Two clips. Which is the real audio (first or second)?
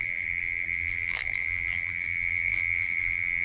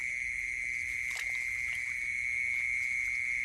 second